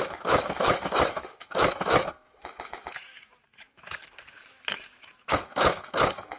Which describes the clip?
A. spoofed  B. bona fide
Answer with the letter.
A